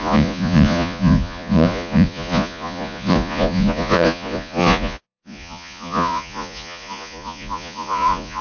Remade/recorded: remade